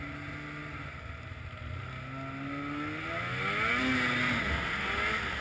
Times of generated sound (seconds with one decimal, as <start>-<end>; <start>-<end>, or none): none